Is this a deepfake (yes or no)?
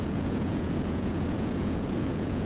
yes